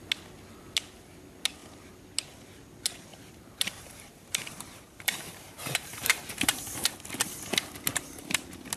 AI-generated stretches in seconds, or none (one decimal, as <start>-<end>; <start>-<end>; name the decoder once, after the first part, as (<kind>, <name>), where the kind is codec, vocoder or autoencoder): 3.1-6.9 (vocoder, BigVGAN v2); 7.9-8.4